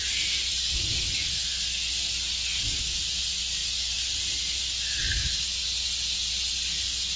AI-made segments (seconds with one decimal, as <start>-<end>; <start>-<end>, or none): 0.5-1.3